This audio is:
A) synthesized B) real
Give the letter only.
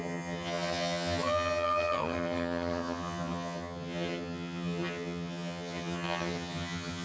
A